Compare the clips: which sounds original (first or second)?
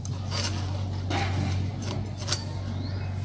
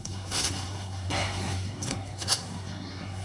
first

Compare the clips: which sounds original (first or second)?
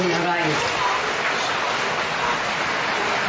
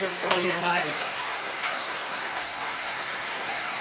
first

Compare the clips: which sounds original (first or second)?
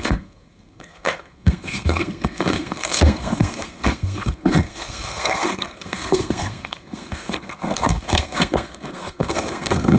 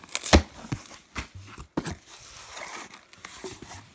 second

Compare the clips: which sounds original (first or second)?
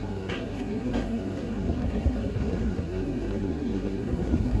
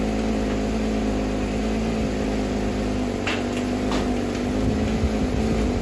second